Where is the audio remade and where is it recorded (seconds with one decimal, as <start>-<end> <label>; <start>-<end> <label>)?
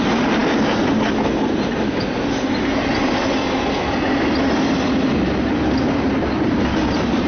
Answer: 0.0-7.3 recorded